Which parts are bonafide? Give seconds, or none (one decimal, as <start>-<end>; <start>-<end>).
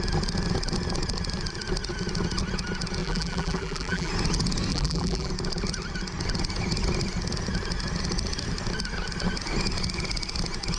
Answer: 0.0-3.0; 4.1-4.7; 5.3-10.8